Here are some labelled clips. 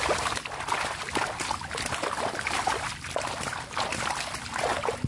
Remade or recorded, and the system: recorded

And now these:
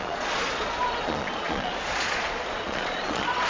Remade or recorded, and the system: remade, vocoder, Vocos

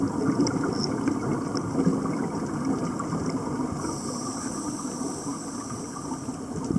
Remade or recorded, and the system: recorded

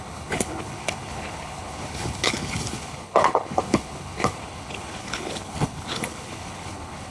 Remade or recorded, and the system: remade, codec, HILCodec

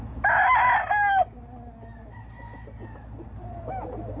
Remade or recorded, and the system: recorded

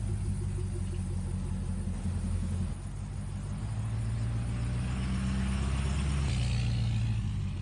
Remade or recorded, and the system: recorded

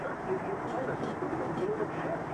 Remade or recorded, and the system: remade, vocoder, BigVGAN v2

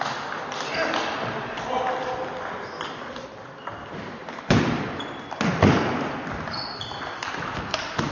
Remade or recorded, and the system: recorded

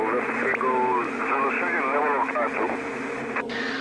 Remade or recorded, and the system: recorded